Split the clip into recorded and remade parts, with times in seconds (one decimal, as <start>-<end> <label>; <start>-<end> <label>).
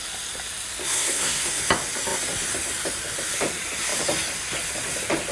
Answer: 0.0-0.8 recorded; 0.8-1.6 remade; 1.6-5.3 recorded